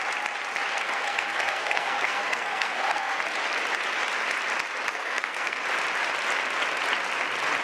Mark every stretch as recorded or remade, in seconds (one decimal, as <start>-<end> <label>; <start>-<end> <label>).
0.0-0.7 recorded; 0.7-3.2 remade; 3.2-4.9 recorded; 4.9-5.6 remade; 5.6-7.6 recorded